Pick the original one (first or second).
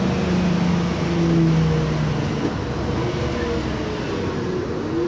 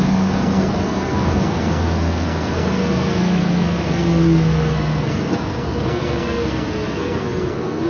first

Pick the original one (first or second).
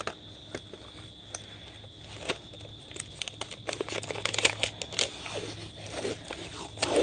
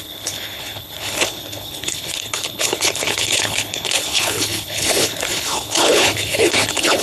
first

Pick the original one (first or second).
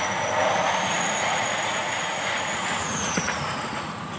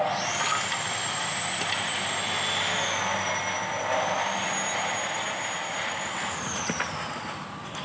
second